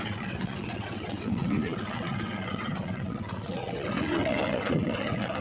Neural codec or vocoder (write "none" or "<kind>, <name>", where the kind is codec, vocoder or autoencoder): vocoder, WaveNeXt